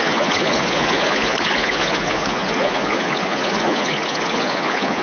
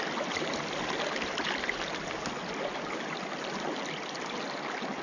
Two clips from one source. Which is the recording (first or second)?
second